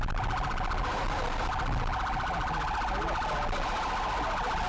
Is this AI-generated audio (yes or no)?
no